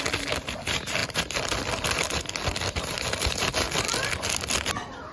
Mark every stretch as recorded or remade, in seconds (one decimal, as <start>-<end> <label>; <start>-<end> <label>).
0.0-5.1 recorded